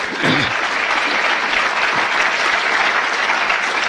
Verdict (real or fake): real